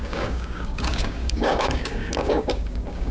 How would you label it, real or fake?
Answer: fake